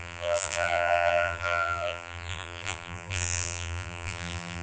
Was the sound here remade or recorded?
remade